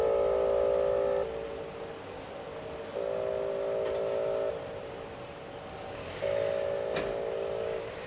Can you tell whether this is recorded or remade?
recorded